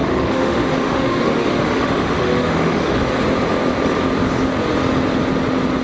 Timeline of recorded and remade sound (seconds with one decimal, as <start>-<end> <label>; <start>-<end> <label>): 0.0-3.0 remade; 3.0-5.8 recorded